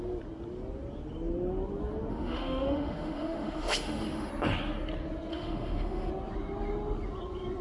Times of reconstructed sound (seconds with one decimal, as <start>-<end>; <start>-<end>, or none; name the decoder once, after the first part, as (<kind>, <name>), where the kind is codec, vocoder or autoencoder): 2.1-4.3 (autoencoder, DAC-VAE); 5.3-6.1